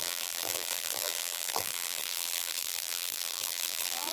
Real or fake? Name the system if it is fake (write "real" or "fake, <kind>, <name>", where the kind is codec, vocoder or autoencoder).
fake, vocoder, BigVGAN v2